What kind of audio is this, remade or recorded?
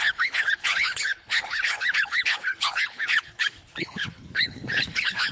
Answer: remade